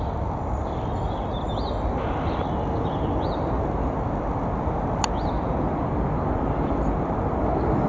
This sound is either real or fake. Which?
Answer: real